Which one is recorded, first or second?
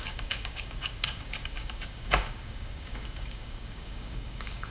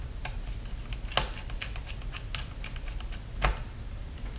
second